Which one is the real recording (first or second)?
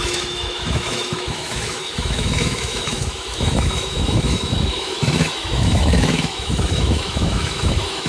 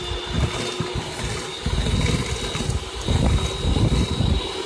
second